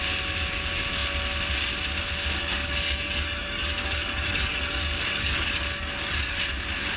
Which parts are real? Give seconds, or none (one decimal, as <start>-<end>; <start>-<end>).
0.0-2.4; 6.4-7.0